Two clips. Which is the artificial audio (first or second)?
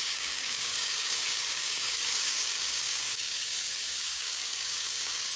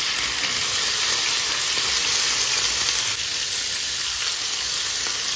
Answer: first